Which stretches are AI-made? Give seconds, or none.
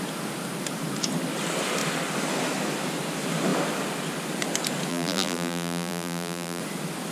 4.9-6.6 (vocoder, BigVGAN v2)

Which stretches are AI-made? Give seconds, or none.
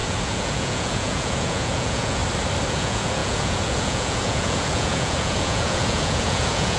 0.0-2.2 (vocoder, Vocos); 2.7-6.8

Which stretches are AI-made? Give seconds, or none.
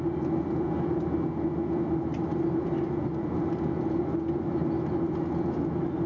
none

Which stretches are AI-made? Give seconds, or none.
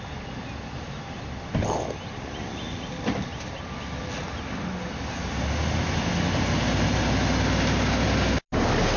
none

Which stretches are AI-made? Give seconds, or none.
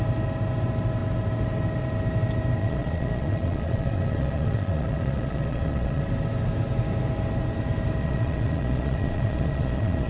2.6-6.0 (vocoder, Vocos); 8.0-10.1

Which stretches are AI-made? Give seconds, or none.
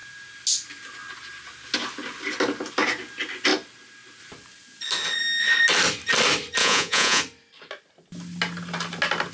6.6-7.2 (vocoder, Vocos)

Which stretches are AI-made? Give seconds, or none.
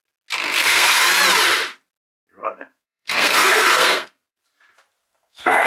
0.4-1.0 (codec, SNAC); 2.4-4.4; 5.0-5.7